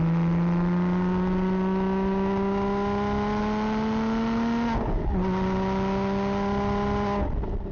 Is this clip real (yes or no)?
yes